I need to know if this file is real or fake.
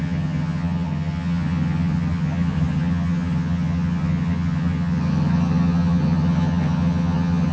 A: fake